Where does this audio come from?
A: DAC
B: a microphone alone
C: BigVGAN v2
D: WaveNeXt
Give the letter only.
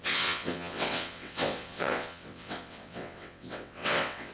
D